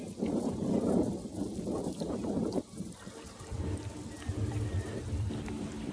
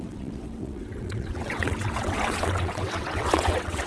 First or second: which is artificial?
second